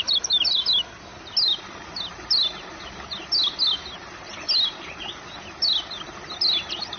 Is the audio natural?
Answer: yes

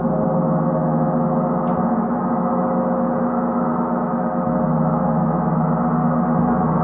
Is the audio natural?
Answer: yes